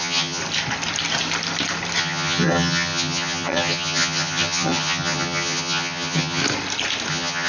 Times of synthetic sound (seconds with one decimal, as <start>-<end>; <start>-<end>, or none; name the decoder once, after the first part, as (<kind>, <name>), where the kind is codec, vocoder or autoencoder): 0.0-0.4 (vocoder, HiFi-GAN); 2.0-6.4; 7.1-7.5

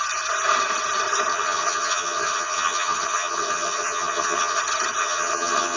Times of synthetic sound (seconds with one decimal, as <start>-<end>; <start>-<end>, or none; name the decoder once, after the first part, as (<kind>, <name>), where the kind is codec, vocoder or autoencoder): 1.3-4.6 (vocoder, HiFi-GAN); 5.0-5.8

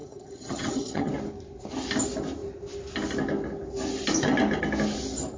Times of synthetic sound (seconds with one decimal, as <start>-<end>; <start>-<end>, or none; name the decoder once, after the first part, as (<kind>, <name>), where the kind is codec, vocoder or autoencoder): 0.0-1.1 (vocoder, HiFi-GAN)

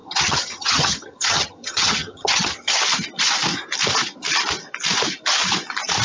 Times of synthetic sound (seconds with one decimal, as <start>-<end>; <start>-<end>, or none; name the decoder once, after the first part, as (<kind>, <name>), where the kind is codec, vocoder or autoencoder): 0.0-2.8 (vocoder, HiFi-GAN)

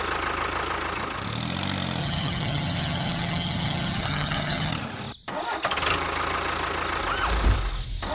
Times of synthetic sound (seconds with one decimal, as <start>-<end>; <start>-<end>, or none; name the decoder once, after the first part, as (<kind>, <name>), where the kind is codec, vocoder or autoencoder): 2.0-4.7 (vocoder, HiFi-GAN)